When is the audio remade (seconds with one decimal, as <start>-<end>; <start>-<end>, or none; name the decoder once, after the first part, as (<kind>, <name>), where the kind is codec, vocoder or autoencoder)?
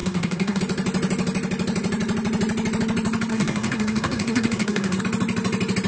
0.0-0.6 (codec, SNAC); 3.3-5.0